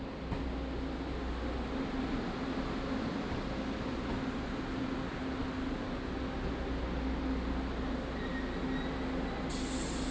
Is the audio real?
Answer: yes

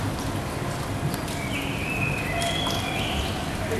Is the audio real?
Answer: yes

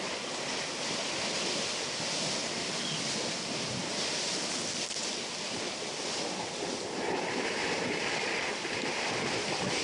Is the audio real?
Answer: yes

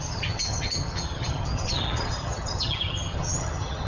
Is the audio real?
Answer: no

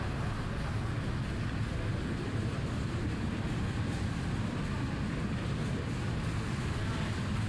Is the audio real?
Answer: yes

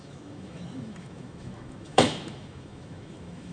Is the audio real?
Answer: no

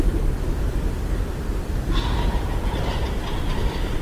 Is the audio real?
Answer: yes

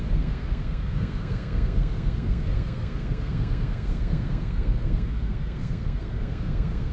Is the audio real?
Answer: no